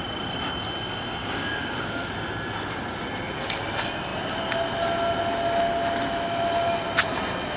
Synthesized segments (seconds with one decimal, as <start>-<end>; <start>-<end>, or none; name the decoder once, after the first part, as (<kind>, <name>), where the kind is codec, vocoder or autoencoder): 1.2-2.1 (codec, DAC)